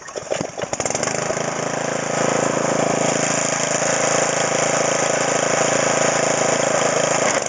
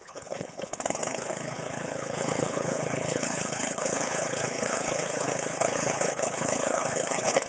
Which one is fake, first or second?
second